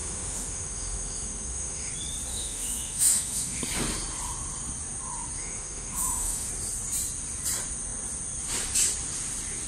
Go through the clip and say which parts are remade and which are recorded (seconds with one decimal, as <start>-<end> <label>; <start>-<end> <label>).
0.0-1.9 remade; 1.9-2.3 recorded; 2.3-3.6 remade; 3.6-5.4 recorded; 5.4-6.5 remade; 6.5-9.7 recorded